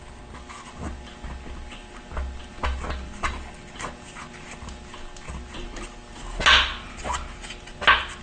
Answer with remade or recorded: recorded